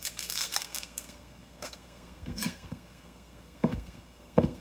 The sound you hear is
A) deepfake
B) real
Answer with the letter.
A